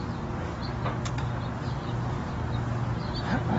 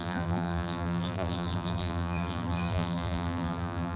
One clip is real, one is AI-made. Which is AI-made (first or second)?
second